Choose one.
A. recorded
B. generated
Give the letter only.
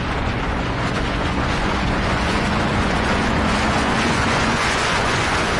B